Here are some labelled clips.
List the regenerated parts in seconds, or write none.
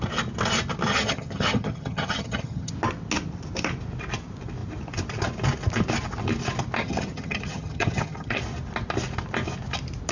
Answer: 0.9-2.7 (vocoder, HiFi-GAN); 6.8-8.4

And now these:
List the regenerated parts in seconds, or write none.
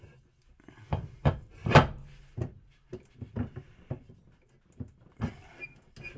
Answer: 1.6-2.1 (vocoder, BigVGAN v2)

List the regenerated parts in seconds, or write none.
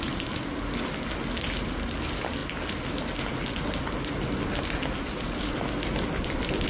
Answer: none